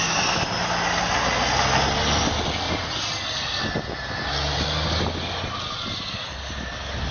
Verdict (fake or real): real